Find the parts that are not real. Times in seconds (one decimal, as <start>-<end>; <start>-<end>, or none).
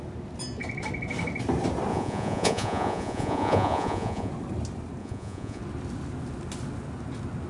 1.9-4.3; 5.0-5.6